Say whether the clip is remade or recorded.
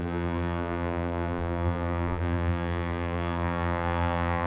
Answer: remade